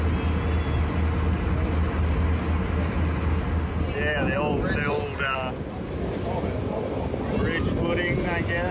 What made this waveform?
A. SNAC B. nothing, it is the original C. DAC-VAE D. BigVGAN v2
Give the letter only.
B